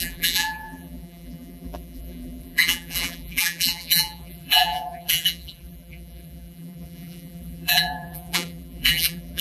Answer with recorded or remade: remade